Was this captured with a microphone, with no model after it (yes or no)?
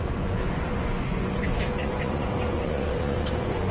no